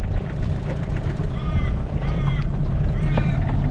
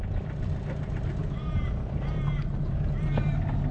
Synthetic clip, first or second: first